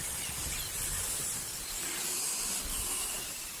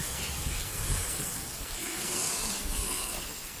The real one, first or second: first